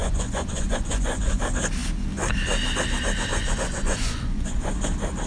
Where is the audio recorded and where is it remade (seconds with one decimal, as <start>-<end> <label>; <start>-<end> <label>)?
0.0-1.4 remade; 1.4-3.3 recorded; 3.3-4.8 remade; 4.8-5.3 recorded